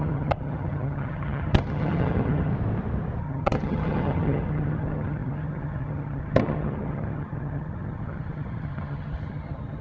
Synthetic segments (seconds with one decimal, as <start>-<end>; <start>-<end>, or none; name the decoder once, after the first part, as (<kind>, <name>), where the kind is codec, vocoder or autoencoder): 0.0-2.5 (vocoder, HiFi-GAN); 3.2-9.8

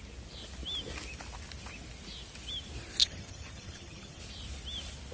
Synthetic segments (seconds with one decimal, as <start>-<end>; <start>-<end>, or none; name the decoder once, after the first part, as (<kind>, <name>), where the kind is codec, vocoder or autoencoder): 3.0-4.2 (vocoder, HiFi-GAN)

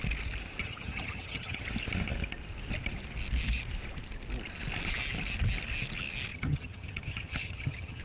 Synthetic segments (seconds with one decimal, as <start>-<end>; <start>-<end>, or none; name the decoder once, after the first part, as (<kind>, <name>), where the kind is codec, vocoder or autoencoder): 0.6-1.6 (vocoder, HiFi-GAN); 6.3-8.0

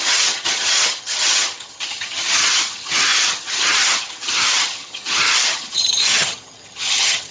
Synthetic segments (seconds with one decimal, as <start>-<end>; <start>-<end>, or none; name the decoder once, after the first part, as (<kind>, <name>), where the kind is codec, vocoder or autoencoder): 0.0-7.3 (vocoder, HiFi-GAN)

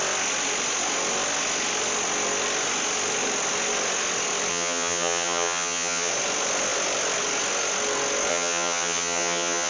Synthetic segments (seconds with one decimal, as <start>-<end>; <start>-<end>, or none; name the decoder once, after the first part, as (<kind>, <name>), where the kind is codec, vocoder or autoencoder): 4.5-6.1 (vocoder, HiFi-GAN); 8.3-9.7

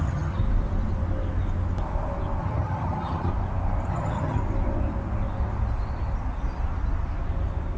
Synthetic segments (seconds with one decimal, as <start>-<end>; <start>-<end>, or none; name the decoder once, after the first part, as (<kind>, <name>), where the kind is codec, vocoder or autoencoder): 0.0-0.4 (vocoder, HiFi-GAN); 2.4-3.3; 3.9-4.4